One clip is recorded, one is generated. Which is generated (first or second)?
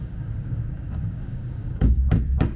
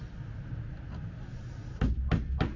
first